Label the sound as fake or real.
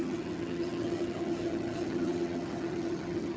fake